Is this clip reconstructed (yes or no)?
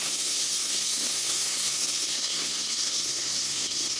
yes